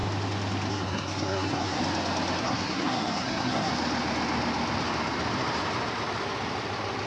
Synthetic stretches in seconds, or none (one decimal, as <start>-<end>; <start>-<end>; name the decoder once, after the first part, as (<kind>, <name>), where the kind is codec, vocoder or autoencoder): 0.7-1.8 (codec, SNAC); 2.4-3.7